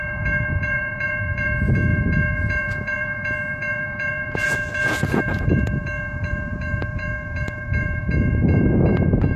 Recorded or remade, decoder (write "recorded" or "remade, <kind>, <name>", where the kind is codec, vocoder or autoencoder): remade, vocoder, Vocos